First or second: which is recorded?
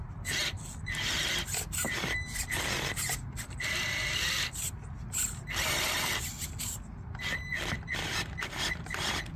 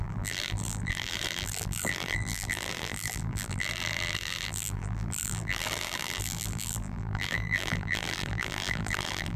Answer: first